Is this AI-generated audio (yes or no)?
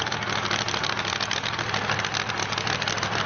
no